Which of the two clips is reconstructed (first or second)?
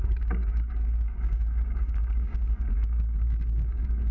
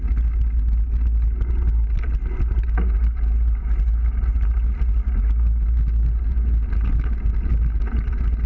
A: first